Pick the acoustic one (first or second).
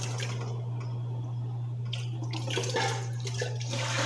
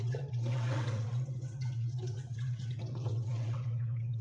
first